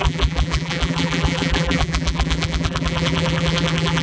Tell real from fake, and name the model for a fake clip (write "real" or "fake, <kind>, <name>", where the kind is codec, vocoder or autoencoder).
fake, vocoder, BigVGAN v2